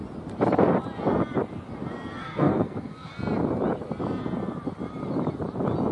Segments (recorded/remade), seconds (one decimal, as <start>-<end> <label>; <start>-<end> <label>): 0.0-2.2 recorded; 2.2-3.1 remade; 3.1-5.9 recorded